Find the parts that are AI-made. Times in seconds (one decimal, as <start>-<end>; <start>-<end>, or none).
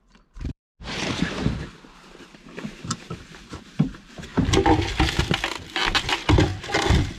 0.0-0.7; 3.5-4.3; 6.1-6.5